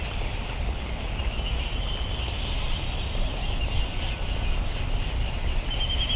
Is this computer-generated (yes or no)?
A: no